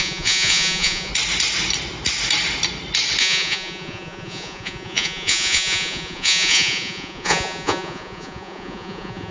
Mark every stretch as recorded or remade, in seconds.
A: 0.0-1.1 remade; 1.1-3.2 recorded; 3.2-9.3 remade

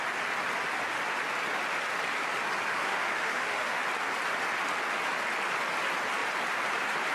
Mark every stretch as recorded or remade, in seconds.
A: 0.0-2.7 recorded; 2.7-3.8 remade; 3.8-7.1 recorded